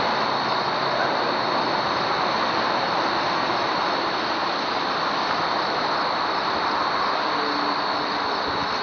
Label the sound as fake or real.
real